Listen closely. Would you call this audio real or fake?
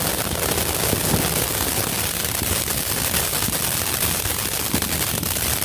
real